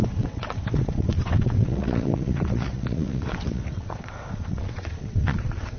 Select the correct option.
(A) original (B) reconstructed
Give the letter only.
B